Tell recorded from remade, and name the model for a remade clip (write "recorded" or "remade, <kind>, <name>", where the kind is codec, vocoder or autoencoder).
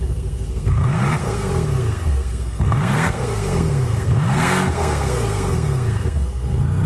remade, codec, SNAC